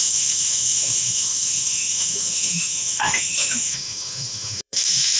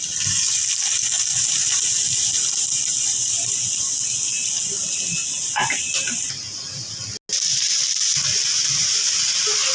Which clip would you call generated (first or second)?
first